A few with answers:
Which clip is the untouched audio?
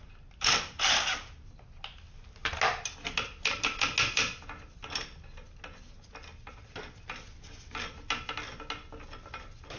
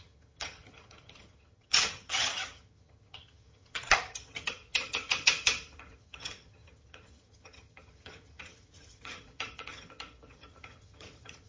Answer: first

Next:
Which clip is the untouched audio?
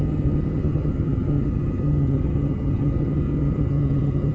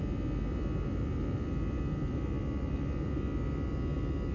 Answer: second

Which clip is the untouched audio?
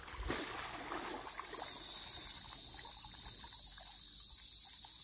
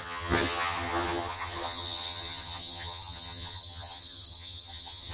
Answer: first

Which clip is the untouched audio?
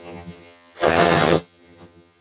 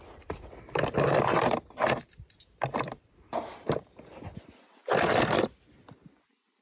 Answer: second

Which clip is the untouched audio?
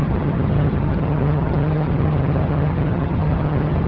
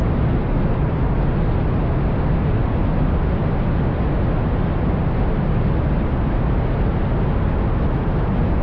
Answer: second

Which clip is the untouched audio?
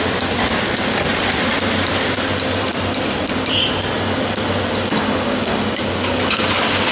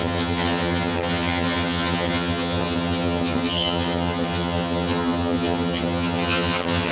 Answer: first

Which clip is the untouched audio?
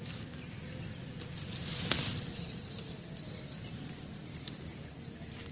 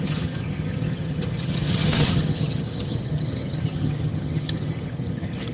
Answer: first